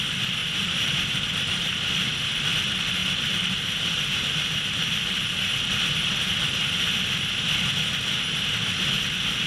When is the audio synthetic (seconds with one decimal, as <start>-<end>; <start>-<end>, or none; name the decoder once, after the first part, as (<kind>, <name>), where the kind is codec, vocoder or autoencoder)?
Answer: 0.4-1.2 (vocoder, BigVGAN v2); 3.0-5.3